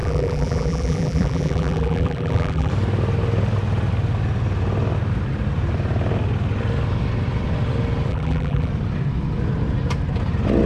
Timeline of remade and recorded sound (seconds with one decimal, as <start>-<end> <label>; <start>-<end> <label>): 0.0-2.7 remade; 2.7-8.1 recorded; 8.1-8.7 remade; 8.7-10.7 recorded

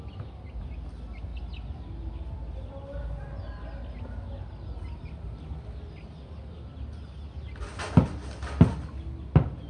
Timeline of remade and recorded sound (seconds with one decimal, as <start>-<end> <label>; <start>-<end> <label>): 0.0-9.7 recorded

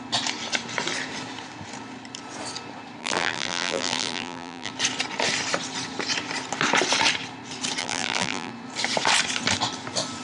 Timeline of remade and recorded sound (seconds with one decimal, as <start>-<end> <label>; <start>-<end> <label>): 0.0-3.0 recorded; 3.0-4.7 remade; 4.7-7.8 recorded; 7.8-8.5 remade; 8.5-10.2 recorded